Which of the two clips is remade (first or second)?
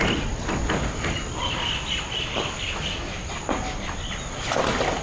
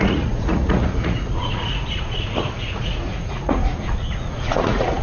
second